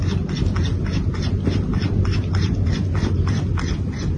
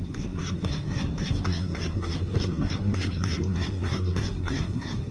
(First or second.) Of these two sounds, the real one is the first